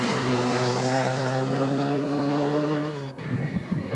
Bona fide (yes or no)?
no